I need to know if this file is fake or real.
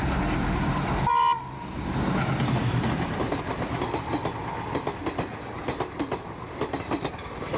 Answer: real